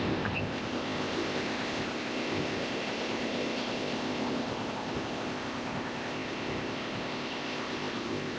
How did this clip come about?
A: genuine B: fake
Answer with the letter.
B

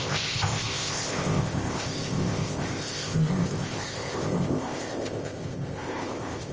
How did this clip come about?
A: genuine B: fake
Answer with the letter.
B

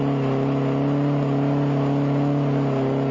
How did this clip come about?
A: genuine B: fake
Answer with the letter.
A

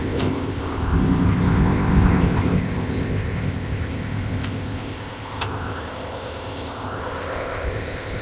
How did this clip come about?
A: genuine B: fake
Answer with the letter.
B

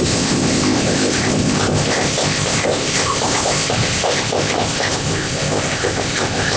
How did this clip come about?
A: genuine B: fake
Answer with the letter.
B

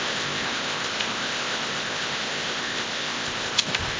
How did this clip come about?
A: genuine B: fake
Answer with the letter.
B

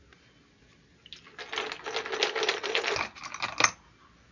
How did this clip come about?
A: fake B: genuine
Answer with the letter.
B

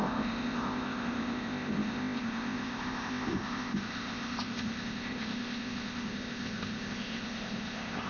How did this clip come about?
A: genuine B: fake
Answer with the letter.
B